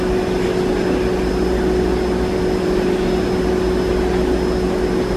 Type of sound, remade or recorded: recorded